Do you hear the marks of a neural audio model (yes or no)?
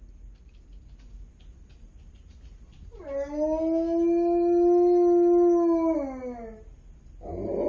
no